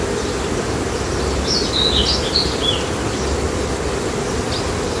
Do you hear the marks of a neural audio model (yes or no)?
no